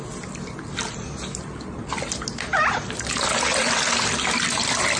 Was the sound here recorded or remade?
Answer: recorded